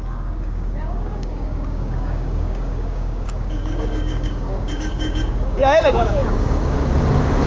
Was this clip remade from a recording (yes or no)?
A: yes